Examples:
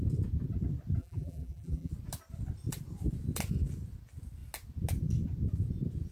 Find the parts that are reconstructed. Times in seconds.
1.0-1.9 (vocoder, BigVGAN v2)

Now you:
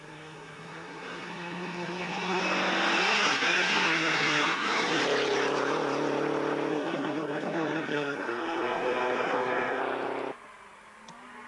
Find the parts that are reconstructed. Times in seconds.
0.0-2.4 (codec, SNAC); 3.0-5.0; 6.7-9.8

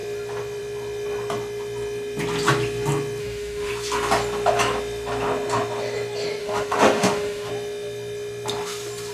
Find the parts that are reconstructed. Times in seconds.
3.2-3.7 (autoencoder, DAC-VAE); 6.4-7.5